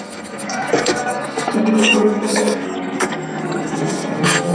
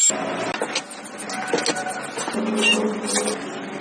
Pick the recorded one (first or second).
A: second